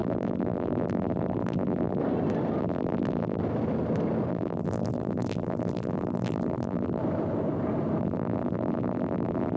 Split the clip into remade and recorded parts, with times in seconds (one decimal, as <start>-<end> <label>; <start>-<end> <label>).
0.0-2.0 remade; 2.0-2.6 recorded; 2.6-3.4 remade; 3.4-4.3 recorded; 4.3-7.0 remade; 7.0-8.0 recorded; 8.0-9.6 remade